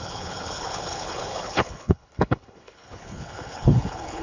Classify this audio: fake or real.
fake